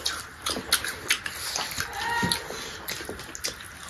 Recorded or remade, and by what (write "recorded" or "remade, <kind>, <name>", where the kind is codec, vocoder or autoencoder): recorded